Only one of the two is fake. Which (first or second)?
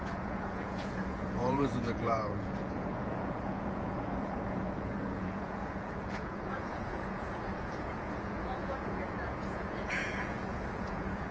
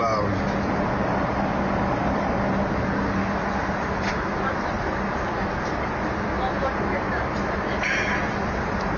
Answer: first